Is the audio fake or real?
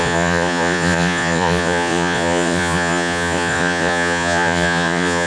fake